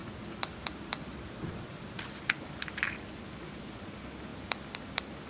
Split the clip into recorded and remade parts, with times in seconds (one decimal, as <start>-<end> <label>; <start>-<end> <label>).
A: 0.0-1.0 remade; 1.0-5.3 recorded